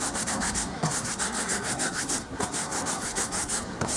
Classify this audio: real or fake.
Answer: fake